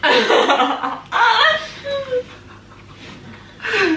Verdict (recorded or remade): recorded